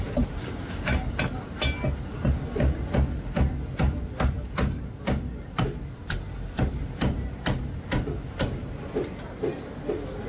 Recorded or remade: recorded